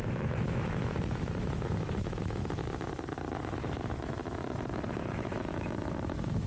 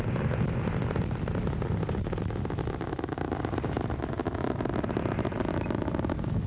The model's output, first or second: first